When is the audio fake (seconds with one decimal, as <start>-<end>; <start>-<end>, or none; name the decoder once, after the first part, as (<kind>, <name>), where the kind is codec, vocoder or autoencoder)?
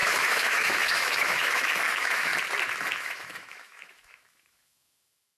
0.0-2.3 (autoencoder, DAC-VAE); 3.0-5.4